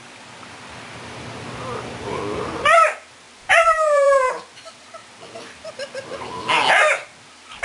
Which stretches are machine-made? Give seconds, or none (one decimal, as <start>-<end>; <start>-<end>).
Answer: 3.4-4.3